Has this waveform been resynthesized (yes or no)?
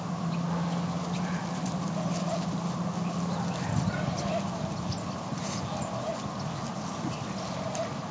no